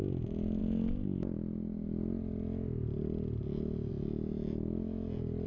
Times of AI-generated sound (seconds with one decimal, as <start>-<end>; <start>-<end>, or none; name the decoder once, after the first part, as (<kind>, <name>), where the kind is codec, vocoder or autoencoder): none

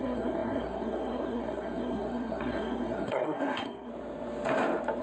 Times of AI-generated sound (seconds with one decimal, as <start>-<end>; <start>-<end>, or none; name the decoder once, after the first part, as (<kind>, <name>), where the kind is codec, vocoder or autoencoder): 0.0-3.9 (codec, SNAC)